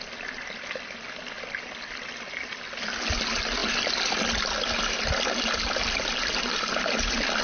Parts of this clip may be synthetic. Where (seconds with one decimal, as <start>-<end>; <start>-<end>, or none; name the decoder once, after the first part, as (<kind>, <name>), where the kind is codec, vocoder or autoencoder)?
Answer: none